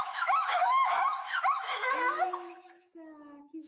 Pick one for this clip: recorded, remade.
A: remade